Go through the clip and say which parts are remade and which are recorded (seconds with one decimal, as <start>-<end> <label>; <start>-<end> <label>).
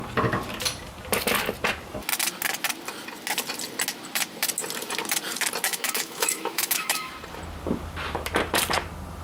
0.0-5.7 recorded; 5.7-7.1 remade; 7.1-9.2 recorded